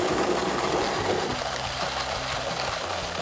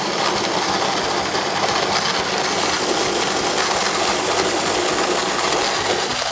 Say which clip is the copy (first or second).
first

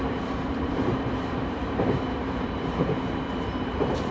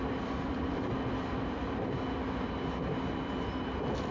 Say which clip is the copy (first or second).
first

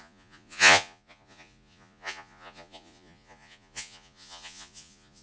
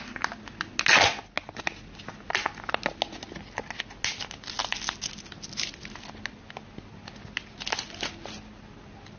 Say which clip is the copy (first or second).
first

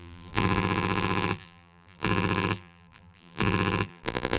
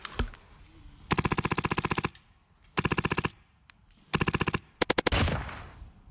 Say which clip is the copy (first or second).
first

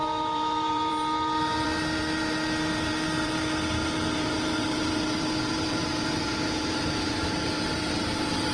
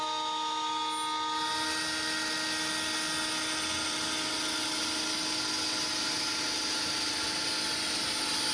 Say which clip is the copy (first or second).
first